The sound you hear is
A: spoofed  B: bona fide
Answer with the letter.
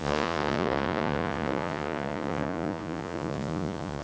A